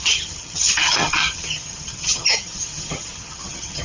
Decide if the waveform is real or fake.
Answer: fake